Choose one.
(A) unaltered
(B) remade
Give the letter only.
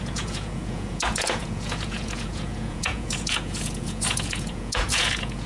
B